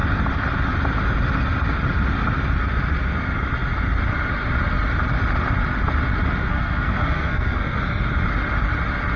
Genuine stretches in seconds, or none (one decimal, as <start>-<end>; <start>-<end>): 0.0-6.5; 7.8-9.2